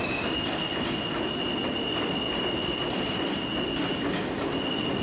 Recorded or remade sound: recorded